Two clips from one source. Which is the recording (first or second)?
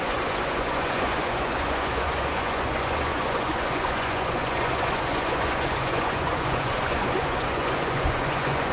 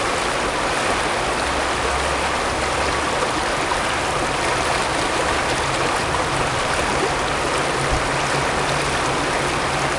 second